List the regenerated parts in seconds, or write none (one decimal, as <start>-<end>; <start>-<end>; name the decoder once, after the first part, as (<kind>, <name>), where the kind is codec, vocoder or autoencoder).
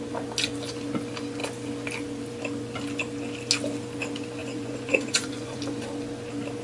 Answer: 4.4-5.6 (vocoder, Vocos)